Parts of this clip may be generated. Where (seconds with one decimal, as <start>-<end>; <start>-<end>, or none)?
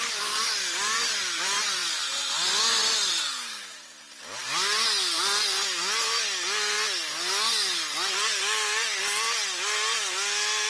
none